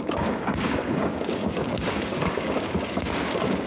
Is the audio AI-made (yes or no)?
yes